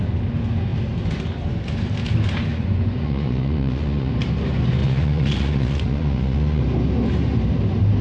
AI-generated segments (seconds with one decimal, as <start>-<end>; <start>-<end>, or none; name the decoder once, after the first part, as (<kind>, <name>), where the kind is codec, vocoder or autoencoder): 2.5-4.1 (vocoder, Vocos); 4.8-6.6